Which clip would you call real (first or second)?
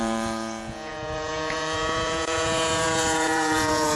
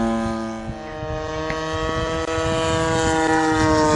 second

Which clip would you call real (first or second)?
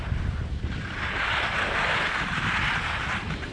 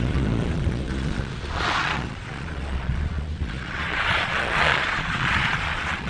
first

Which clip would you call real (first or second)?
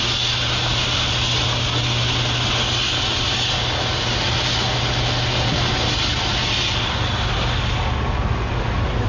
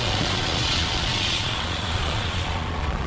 first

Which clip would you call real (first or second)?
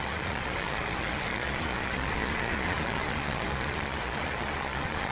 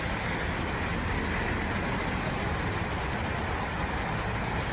second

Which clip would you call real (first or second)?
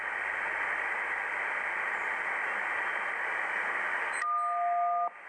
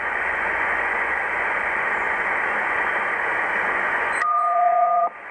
first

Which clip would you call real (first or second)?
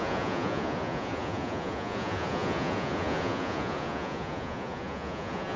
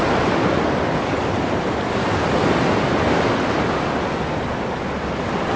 second